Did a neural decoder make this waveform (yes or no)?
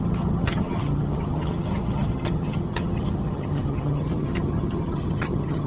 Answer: yes